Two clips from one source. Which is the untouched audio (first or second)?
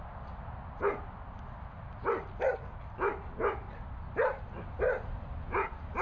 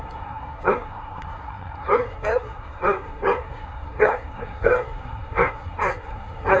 first